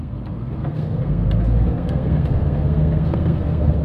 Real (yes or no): no